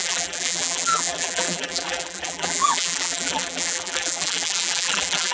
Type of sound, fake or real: fake